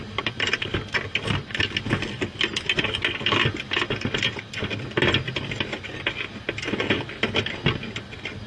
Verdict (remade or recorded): recorded